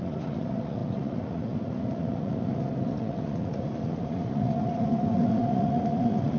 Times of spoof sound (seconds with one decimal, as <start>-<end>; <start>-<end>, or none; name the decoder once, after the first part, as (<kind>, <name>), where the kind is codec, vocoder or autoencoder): 0.0-6.4 (vocoder, Vocos)